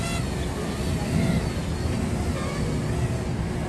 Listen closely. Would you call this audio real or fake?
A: real